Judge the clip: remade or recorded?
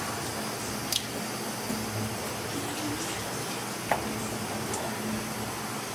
recorded